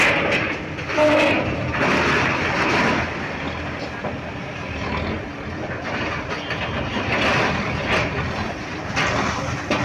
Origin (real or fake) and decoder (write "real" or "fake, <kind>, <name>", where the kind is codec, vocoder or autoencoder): real